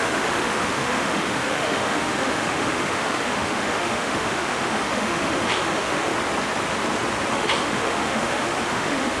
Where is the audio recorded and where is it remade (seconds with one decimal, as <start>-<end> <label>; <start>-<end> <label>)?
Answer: 0.0-6.1 remade; 6.1-7.3 recorded; 7.3-9.2 remade